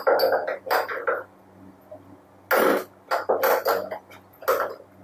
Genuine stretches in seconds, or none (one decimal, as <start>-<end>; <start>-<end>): 0.0-5.0

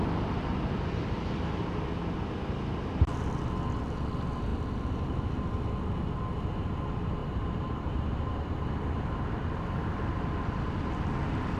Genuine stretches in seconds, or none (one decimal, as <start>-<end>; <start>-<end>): 0.0-7.2; 8.5-9.4; 10.1-11.6